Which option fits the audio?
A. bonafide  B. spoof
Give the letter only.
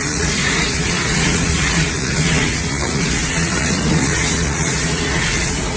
B